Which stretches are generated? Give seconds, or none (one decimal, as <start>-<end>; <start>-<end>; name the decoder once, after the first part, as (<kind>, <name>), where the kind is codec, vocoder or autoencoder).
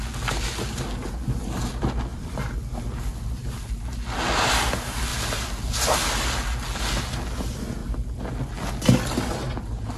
2.1-3.1 (vocoder, BigVGAN v2)